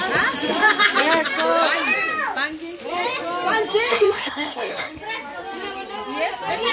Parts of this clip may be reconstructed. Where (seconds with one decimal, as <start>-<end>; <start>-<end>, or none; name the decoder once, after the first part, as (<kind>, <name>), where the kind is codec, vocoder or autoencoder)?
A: 3.9-5.0 (codec, SNAC)